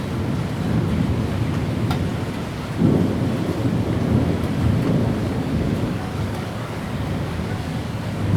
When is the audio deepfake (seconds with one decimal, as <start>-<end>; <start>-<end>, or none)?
5.2-8.4